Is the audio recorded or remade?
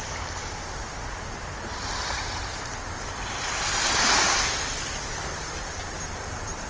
remade